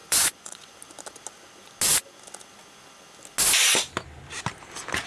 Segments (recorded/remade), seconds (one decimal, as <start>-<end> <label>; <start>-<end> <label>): 0.0-0.8 remade; 0.8-5.1 recorded